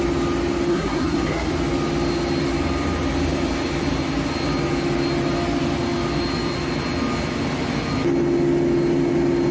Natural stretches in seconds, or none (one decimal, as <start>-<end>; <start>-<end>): 0.0-0.7; 1.5-9.5